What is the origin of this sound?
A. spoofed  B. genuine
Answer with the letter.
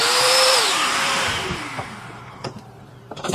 A